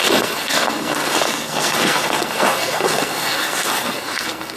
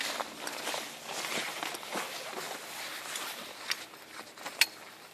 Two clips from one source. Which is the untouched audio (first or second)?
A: second